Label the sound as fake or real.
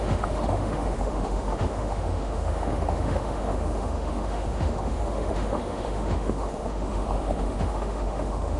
fake